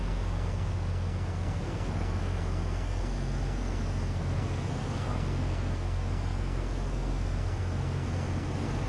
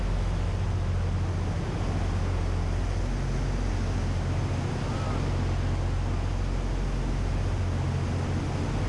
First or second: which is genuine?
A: second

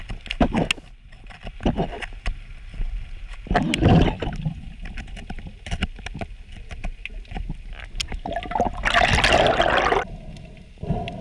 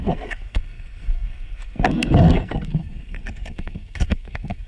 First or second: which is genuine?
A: first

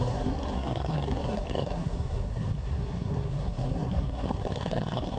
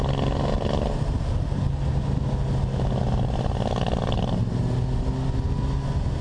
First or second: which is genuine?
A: second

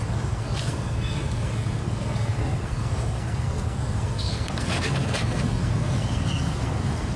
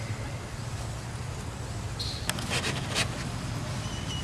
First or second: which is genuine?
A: second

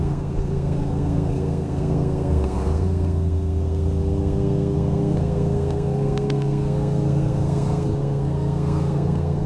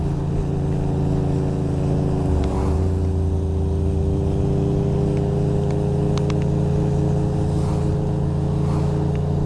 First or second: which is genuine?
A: second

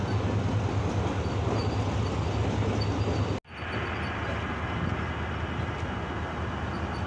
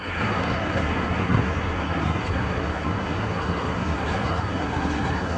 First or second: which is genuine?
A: first